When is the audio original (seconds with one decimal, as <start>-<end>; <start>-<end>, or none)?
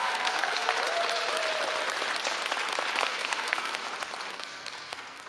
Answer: 0.7-3.0; 3.8-4.3